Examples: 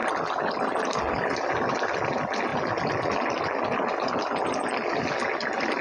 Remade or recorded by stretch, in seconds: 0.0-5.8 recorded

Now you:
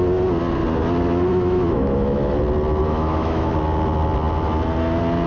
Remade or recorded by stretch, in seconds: 0.0-1.3 recorded; 1.3-2.4 remade; 2.4-2.8 recorded; 2.8-3.5 remade; 3.5-5.3 recorded

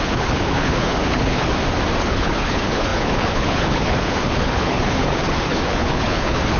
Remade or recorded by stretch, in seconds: 0.0-1.5 remade; 1.5-2.0 recorded; 2.0-6.6 remade

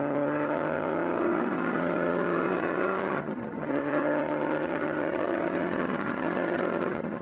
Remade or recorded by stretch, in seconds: 0.0-7.2 remade